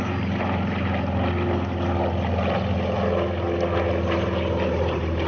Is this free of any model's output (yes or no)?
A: yes